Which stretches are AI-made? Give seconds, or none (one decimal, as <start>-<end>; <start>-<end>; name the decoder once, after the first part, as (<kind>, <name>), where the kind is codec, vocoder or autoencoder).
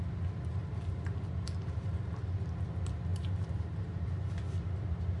0.6-2.2 (vocoder, BigVGAN v2); 3.1-4.4